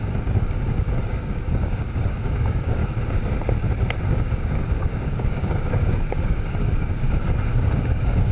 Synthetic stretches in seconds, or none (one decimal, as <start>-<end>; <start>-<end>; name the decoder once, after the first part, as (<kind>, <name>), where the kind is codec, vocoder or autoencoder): 0.0-2.8 (codec, DAC); 4.1-8.3